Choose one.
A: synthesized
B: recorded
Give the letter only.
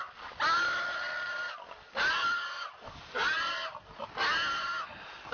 B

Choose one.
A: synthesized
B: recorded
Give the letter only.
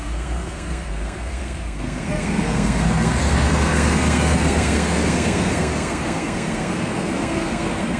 A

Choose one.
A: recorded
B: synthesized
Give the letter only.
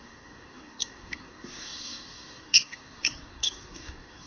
B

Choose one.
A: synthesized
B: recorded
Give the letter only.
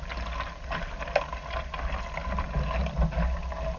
B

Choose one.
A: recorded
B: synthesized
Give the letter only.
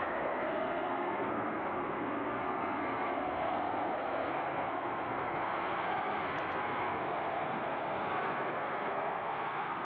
B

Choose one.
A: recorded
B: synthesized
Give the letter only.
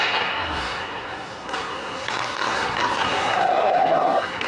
B